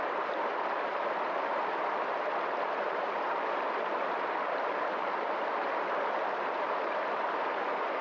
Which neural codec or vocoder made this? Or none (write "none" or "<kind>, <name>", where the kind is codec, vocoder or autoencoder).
none